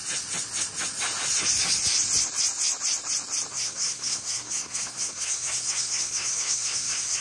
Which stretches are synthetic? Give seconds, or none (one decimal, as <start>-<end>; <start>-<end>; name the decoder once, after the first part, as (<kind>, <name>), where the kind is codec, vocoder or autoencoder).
3.5-7.2 (codec, SNAC)

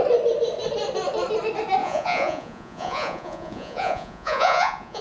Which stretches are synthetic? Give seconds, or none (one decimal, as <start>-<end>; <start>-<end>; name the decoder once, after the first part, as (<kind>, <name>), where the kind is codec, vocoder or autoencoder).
1.8-5.0 (vocoder, Vocos)

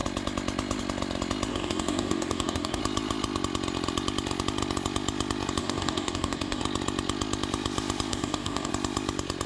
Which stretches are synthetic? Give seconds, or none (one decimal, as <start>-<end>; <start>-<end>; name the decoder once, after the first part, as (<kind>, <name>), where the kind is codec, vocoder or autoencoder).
1.5-2.8 (codec, DAC); 5.6-6.6; 8.1-8.7